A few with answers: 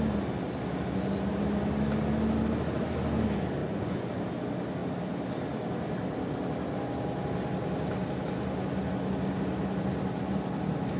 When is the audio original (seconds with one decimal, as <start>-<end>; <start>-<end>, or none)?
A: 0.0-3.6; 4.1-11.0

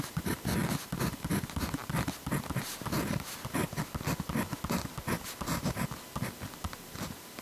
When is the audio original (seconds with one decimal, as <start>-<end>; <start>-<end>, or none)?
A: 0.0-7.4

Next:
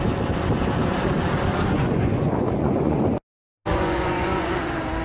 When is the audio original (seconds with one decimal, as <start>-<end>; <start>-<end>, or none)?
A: 0.0-1.7; 3.0-3.7; 4.5-5.0

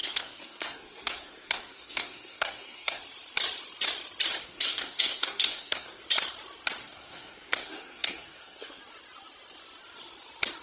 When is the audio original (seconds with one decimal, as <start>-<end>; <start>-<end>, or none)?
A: 3.0-4.4; 6.0-6.8; 8.8-10.6

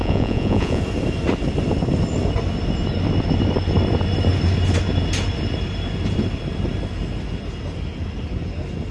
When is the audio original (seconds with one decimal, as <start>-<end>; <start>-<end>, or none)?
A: 0.8-8.9